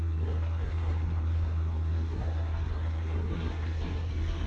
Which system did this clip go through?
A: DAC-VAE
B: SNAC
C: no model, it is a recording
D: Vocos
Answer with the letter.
B